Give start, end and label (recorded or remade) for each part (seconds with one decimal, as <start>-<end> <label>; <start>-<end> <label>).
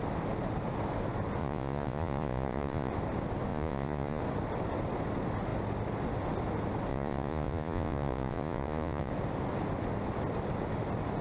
0.0-1.4 recorded; 1.4-2.9 remade; 2.9-3.5 recorded; 3.5-4.2 remade; 4.2-6.9 recorded; 6.9-9.1 remade; 9.1-11.2 recorded